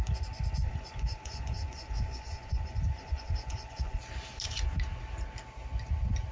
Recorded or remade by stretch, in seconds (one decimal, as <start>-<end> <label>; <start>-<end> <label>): 0.0-0.6 recorded; 0.6-4.0 remade; 4.0-6.3 recorded